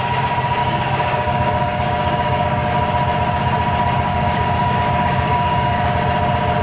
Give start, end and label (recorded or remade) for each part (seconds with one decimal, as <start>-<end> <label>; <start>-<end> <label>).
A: 0.0-0.6 recorded; 0.6-2.7 remade; 2.7-4.1 recorded; 4.1-5.9 remade; 5.9-6.6 recorded